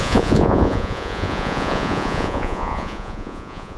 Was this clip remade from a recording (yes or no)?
yes